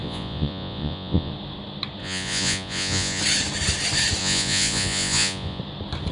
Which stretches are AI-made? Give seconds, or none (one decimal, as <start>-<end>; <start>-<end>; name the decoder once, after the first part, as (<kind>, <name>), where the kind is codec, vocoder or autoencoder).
0.0-1.3 (vocoder, Vocos); 2.0-3.2; 4.2-5.6

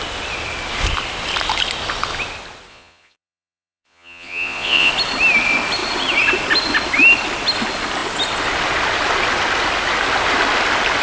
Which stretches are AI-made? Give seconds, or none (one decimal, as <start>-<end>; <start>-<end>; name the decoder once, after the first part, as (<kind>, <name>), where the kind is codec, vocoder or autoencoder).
2.7-4.9 (vocoder, Vocos)

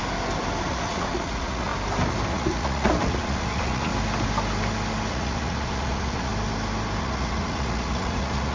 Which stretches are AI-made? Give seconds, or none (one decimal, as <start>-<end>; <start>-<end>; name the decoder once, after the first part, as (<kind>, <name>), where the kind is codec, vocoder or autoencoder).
0.7-1.7 (vocoder, Vocos); 2.3-3.9; 5.1-6.3; 7.0-8.5

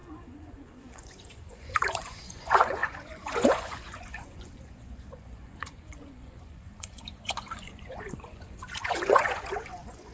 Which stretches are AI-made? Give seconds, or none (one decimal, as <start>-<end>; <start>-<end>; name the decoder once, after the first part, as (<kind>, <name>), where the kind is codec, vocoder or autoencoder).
0.0-10.1 (vocoder, Vocos)